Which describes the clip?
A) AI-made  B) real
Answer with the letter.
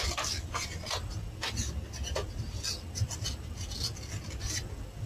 B